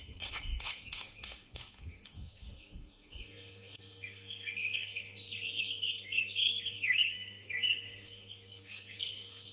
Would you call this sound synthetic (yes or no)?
yes